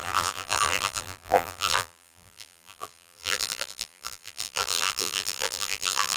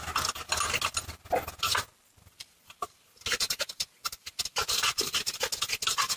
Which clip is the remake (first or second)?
first